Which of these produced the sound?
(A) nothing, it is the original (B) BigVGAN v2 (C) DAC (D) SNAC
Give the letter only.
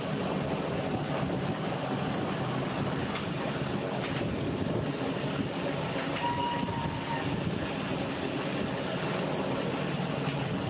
A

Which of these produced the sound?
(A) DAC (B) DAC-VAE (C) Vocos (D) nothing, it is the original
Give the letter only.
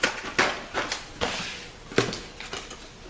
D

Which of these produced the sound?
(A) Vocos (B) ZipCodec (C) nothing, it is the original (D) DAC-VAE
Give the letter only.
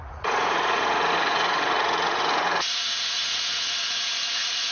A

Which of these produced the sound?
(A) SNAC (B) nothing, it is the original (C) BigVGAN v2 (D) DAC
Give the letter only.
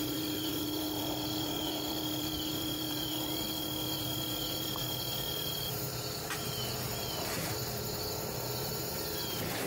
C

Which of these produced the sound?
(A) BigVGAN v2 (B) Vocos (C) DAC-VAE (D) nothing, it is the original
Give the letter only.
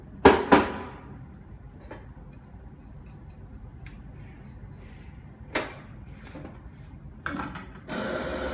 D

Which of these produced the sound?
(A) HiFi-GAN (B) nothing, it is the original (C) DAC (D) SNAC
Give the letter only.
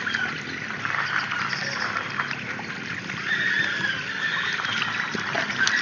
B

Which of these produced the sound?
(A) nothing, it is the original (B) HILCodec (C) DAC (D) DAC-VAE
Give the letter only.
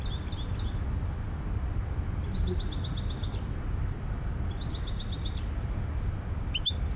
A